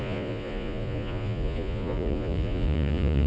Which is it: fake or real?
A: fake